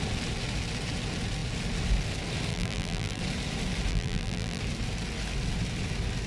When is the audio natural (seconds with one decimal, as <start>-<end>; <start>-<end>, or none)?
0.0-2.5; 3.2-3.9; 4.6-6.3